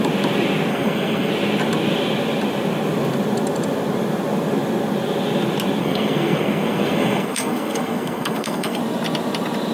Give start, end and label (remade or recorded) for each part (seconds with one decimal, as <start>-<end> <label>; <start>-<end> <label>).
0.0-0.7 recorded; 0.7-1.3 remade; 1.3-5.8 recorded; 5.8-8.8 remade; 8.8-9.7 recorded